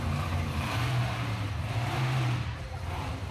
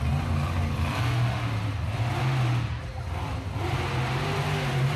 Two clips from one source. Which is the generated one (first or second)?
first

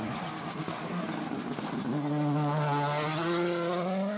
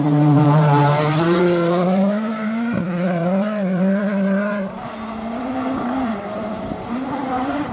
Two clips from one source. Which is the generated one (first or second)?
second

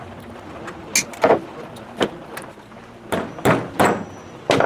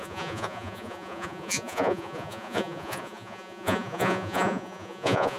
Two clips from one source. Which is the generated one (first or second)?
second